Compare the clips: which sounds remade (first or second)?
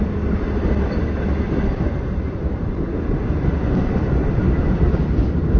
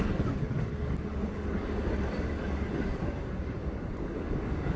second